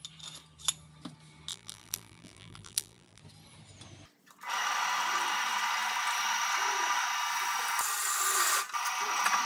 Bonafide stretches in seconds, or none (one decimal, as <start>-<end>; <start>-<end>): 0.0-1.5; 3.2-9.5